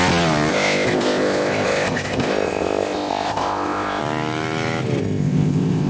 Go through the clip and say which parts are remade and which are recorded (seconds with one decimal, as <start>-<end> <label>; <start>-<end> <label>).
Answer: 0.0-0.5 recorded; 0.5-4.0 remade; 4.0-5.0 recorded; 5.0-5.9 remade